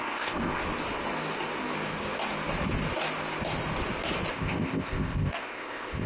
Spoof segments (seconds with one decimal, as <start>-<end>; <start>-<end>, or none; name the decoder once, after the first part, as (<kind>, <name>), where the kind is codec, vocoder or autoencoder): 0.0-0.6 (codec, ZipCodec); 4.3-6.1